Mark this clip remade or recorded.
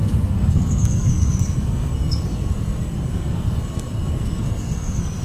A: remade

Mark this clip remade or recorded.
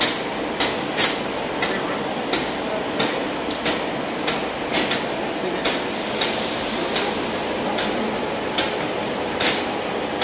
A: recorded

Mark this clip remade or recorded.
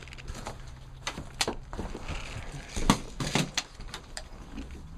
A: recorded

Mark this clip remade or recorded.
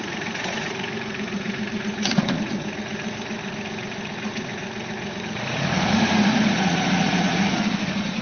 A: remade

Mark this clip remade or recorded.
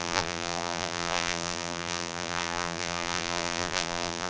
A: remade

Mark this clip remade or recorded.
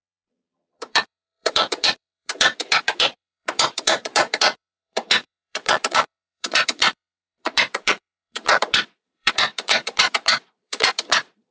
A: remade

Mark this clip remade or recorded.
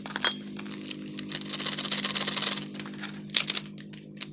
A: recorded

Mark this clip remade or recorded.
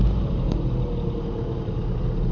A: recorded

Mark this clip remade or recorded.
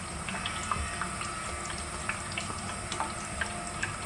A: recorded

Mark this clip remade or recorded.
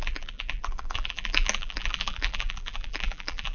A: remade